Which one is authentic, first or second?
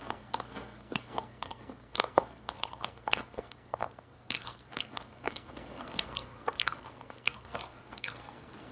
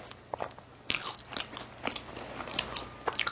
second